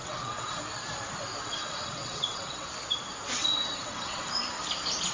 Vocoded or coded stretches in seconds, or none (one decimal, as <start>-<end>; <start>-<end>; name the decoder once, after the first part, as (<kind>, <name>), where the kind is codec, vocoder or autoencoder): 0.0-0.6 (vocoder, WaveNeXt); 1.4-2.7; 3.4-4.3